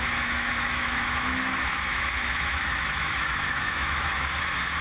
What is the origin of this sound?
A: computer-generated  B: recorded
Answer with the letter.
A